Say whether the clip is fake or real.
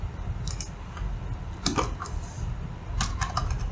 real